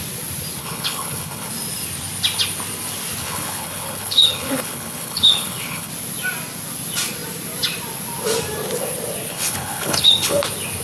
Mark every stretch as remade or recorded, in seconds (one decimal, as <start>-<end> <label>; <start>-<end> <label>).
0.0-0.6 recorded; 0.6-1.5 remade; 1.5-3.2 recorded; 3.2-5.9 remade; 5.9-9.3 recorded; 9.3-10.4 remade; 10.4-10.8 recorded